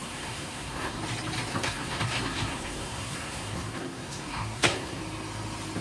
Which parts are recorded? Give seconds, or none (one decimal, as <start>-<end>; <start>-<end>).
1.0-1.5; 5.0-5.8